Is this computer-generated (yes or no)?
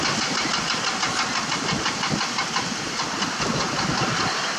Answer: no